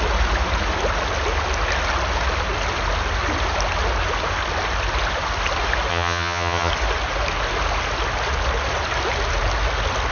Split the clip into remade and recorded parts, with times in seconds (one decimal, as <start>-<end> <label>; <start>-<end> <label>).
0.0-5.9 recorded; 5.9-6.7 remade; 6.7-10.1 recorded